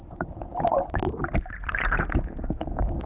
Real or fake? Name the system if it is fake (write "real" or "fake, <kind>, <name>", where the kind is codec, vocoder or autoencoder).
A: real